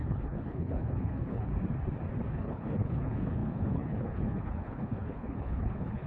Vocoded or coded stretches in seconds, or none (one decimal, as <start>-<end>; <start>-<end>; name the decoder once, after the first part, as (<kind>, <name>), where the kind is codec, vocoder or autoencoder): 0.0-1.5 (codec, HILCodec); 2.3-6.1